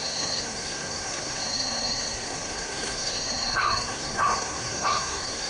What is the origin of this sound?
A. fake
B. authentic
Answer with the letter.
A